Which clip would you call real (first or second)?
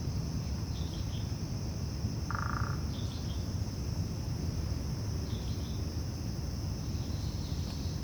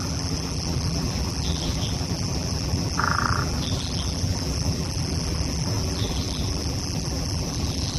first